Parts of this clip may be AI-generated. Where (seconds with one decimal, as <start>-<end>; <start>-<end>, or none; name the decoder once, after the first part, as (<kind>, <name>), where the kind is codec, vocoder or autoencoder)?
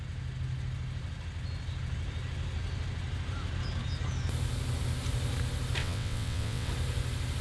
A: 5.8-6.7 (vocoder, WaveNeXt)